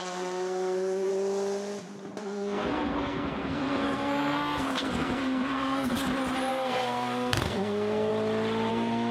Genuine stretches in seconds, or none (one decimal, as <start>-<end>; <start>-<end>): 1.1-2.2; 5.9-6.5; 8.1-8.7